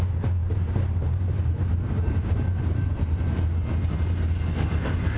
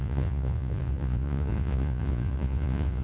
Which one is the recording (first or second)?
first